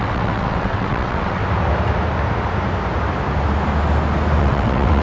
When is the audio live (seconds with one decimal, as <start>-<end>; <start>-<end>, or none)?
1.4-4.4